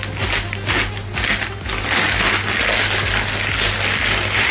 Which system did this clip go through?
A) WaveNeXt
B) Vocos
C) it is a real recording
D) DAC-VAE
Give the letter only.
C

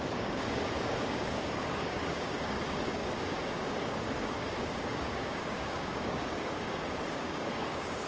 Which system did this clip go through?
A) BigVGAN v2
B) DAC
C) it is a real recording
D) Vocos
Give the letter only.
B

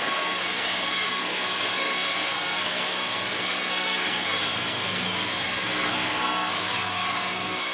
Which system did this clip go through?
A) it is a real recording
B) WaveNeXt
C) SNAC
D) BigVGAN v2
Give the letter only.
C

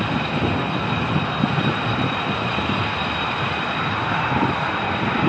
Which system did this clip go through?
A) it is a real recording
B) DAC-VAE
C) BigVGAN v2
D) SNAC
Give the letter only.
A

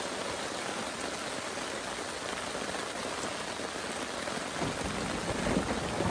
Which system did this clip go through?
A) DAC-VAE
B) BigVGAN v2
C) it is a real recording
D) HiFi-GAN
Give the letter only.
C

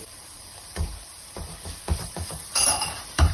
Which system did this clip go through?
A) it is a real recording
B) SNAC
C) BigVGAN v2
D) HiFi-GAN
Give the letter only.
C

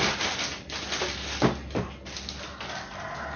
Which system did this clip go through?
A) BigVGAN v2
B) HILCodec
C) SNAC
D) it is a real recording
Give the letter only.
D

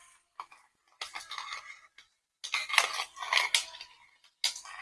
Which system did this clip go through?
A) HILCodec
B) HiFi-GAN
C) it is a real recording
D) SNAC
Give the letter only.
C